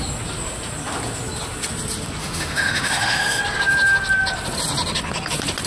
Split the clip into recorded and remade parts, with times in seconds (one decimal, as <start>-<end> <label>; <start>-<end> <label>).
0.0-2.2 recorded; 2.2-3.4 remade; 3.4-5.7 recorded